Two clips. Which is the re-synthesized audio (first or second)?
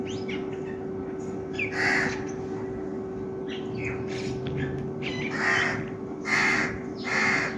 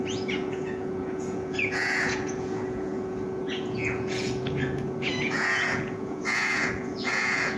second